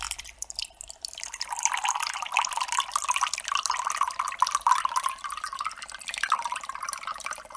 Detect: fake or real fake